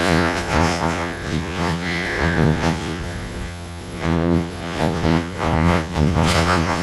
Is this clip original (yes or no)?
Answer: no